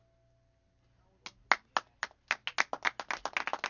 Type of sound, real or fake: real